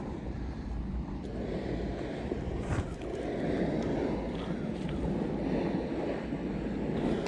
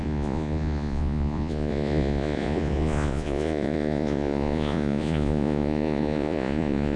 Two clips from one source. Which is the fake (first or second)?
second